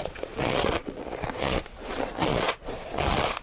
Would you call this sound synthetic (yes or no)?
yes